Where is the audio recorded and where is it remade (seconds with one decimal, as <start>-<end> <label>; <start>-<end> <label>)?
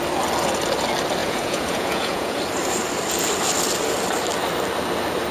0.0-1.2 recorded; 1.2-2.4 remade; 2.4-5.3 recorded